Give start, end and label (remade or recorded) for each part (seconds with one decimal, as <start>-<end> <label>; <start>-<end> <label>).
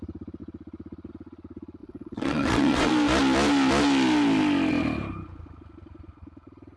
0.0-1.8 recorded; 1.8-2.9 remade; 2.9-6.8 recorded